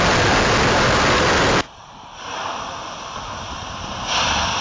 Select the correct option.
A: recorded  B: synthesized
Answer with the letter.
A